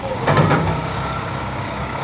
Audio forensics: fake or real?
fake